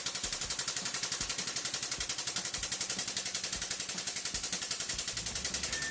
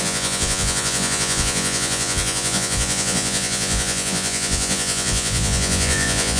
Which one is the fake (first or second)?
second